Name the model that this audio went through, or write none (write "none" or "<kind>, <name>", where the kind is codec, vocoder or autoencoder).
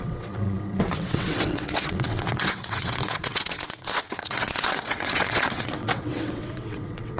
vocoder, WaveNeXt